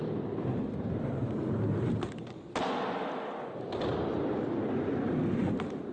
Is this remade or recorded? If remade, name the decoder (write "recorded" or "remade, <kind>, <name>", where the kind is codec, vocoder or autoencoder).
recorded